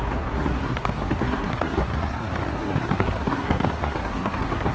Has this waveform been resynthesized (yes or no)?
yes